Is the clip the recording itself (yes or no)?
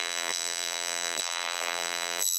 no